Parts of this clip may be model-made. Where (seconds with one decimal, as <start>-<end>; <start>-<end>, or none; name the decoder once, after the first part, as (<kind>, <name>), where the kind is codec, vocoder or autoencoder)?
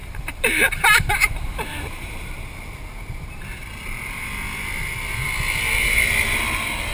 0.0-2.3 (vocoder, BigVGAN v2)